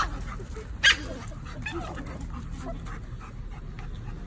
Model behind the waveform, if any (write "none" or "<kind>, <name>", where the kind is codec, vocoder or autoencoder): none